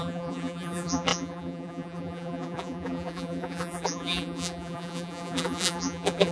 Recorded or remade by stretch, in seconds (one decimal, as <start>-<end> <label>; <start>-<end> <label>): 0.0-6.3 remade